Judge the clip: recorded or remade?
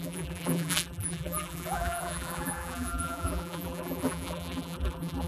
remade